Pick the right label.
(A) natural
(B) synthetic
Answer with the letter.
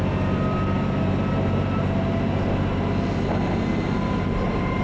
A